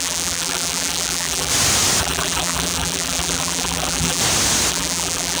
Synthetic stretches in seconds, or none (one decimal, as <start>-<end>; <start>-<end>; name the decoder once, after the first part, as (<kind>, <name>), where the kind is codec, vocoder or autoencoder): 0.0-1.5 (vocoder, BigVGAN v2); 2.0-4.2; 4.7-5.4